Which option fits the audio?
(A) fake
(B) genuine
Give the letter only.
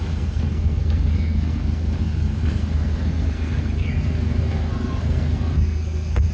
A